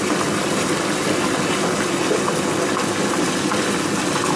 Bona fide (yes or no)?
yes